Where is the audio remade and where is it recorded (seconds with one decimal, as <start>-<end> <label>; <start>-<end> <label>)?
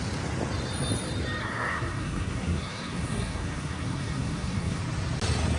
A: 0.0-1.4 recorded; 1.4-4.8 remade; 4.8-5.6 recorded